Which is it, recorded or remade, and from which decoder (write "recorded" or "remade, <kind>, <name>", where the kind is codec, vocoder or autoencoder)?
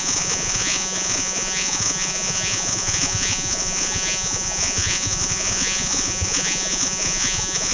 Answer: remade, vocoder, Vocos